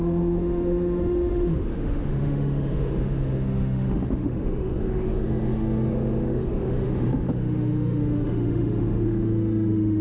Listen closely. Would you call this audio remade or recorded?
remade